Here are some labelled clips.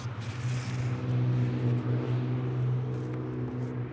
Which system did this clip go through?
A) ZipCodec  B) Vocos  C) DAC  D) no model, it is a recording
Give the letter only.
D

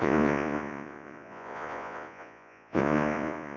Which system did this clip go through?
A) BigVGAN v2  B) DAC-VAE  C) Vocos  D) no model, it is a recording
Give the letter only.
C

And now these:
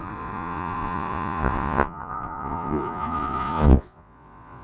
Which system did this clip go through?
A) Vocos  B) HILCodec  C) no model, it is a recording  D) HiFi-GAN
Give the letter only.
A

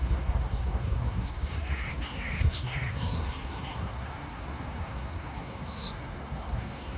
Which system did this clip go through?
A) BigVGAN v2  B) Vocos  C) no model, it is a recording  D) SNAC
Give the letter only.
D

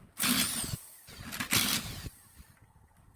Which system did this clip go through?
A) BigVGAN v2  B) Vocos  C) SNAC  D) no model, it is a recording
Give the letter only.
D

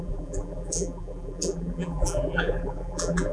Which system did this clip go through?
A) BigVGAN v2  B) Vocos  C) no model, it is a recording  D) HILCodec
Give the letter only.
A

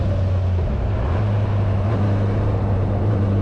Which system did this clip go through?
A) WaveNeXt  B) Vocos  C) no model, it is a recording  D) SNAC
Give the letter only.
C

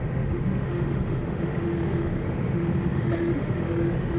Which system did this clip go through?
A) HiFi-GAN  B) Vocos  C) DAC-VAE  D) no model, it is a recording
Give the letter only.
C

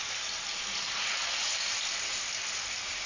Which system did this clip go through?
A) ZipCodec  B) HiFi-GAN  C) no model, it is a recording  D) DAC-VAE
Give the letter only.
C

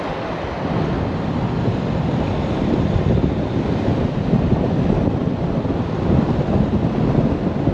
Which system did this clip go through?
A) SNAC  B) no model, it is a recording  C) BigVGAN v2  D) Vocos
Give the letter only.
B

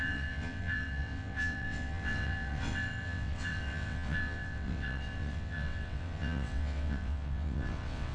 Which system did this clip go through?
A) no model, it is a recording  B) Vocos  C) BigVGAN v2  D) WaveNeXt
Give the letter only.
D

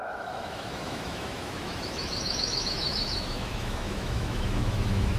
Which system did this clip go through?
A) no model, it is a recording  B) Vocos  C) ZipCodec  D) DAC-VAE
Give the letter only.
D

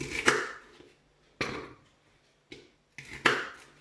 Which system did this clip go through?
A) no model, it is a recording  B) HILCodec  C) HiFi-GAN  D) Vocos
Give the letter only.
A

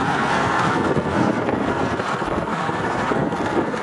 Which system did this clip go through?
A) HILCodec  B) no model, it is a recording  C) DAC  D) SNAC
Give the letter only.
D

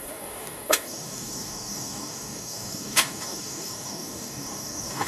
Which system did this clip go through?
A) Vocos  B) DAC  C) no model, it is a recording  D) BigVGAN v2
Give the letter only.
B